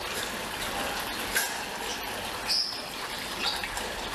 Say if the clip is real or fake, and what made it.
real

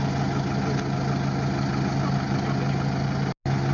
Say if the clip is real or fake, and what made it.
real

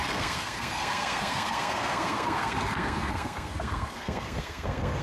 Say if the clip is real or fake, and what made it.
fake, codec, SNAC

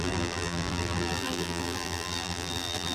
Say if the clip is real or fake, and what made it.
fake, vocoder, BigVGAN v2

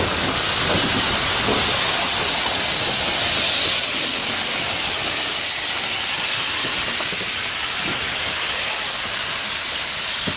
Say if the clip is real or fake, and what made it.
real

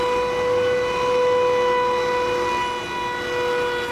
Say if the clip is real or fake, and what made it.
real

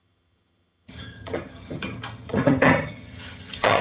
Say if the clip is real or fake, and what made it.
fake, vocoder, HiFi-GAN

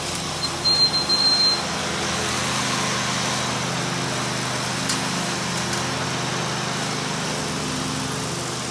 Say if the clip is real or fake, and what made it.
real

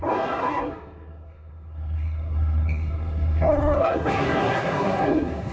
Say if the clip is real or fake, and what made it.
fake, codec, SNAC